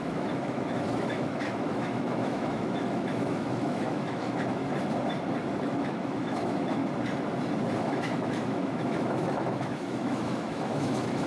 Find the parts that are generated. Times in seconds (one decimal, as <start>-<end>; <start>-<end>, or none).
0.0-4.6; 5.6-6.8; 7.8-11.3